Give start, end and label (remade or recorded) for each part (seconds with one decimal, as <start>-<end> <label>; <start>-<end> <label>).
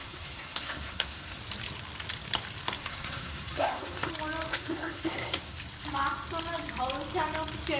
0.0-1.4 remade; 1.4-2.8 recorded; 2.8-4.1 remade; 4.1-4.5 recorded; 4.5-5.6 remade; 5.6-7.8 recorded